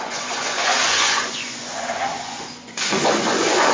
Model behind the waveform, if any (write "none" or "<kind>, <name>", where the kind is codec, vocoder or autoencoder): vocoder, Vocos